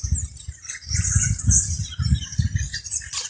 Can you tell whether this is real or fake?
real